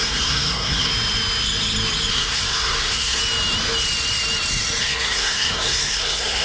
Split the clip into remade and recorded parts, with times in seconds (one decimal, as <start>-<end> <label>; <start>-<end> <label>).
0.0-0.9 remade; 0.9-2.1 recorded; 2.1-3.2 remade; 3.2-4.8 recorded; 4.8-6.4 remade